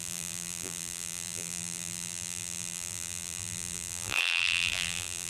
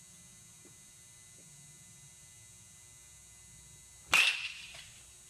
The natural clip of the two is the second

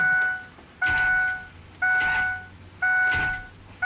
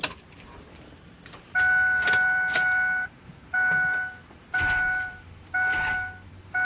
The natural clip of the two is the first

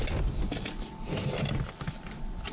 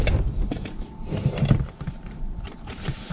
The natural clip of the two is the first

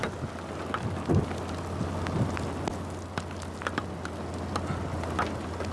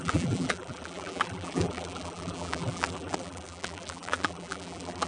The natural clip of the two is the first